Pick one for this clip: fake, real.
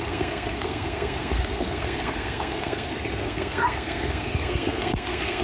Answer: fake